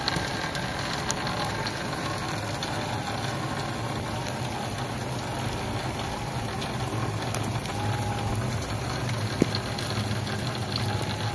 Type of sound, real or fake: real